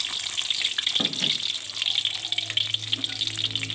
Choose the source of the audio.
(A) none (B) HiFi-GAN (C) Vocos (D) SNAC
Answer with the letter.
A